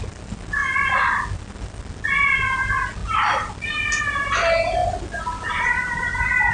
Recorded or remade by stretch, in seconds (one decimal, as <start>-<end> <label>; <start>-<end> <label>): 0.0-6.5 recorded